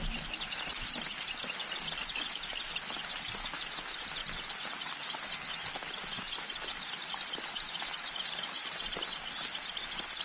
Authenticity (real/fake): real